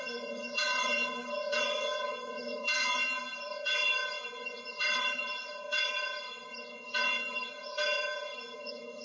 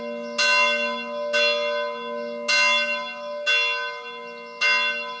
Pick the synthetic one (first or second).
first